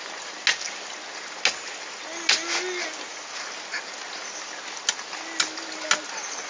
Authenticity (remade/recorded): recorded